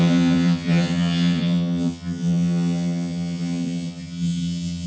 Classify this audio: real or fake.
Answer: fake